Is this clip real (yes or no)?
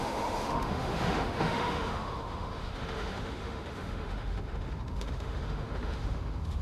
no